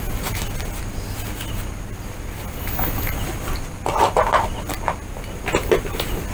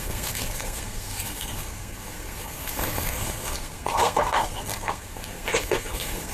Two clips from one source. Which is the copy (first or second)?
second